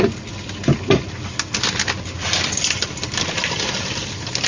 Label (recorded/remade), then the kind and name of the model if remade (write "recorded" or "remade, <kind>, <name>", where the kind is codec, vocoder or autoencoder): recorded